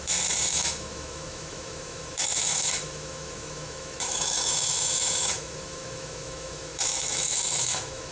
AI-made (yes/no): yes